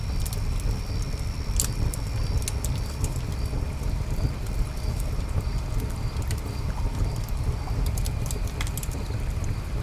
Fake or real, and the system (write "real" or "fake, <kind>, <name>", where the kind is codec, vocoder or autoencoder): real